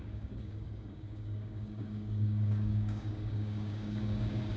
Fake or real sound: fake